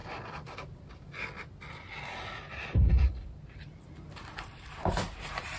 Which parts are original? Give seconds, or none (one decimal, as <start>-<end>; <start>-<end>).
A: 0.0-4.3